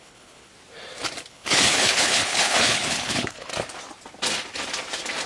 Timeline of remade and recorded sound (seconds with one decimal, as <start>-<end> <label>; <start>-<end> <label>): 0.0-0.5 remade; 0.5-1.3 recorded; 1.3-3.5 remade; 3.5-5.3 recorded